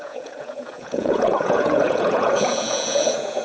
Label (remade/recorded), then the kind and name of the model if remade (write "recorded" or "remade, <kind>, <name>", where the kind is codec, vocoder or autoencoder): remade, vocoder, Vocos